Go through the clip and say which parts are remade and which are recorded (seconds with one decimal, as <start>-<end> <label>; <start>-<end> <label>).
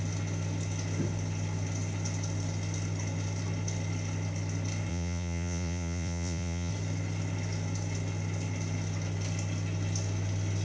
0.0-4.9 recorded; 4.9-6.7 remade; 6.7-10.6 recorded